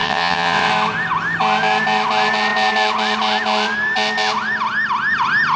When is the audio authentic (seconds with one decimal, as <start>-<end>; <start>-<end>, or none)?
0.7-5.6